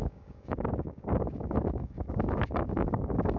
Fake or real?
fake